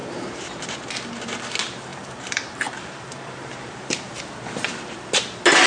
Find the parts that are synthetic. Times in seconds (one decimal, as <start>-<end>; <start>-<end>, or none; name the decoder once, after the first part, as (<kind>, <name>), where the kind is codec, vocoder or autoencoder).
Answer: 0.0-0.7 (vocoder, BigVGAN v2); 1.9-4.2